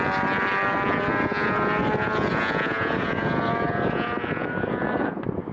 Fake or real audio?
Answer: real